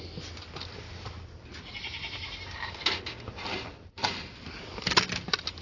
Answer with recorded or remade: recorded